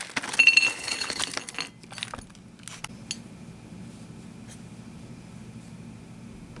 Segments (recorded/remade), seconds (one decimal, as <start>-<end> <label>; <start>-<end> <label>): 0.0-0.7 recorded; 0.7-1.2 remade; 1.2-6.6 recorded